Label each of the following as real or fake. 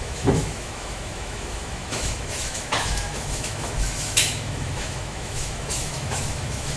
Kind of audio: fake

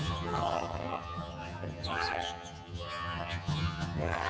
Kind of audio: fake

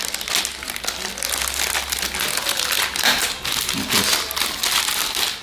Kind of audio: real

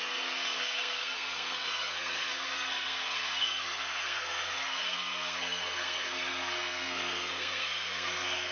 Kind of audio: fake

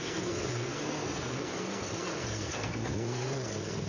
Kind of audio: fake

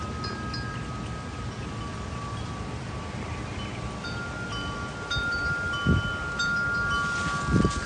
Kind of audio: real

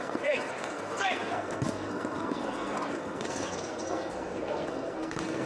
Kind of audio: fake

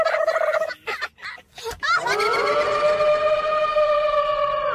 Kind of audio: real